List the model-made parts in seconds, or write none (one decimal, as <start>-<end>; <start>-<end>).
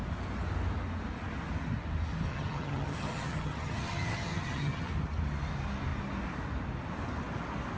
2.3-4.9